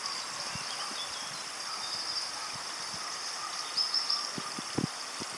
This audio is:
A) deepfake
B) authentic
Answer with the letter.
B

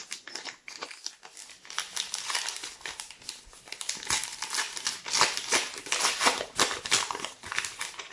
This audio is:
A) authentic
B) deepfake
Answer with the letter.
A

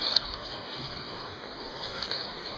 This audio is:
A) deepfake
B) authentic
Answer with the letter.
A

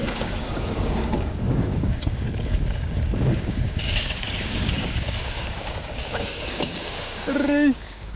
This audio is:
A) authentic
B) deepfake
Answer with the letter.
B